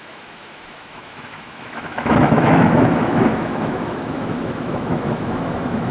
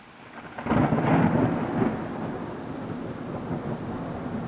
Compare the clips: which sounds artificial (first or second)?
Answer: first